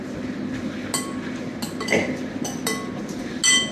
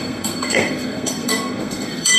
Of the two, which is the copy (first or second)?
second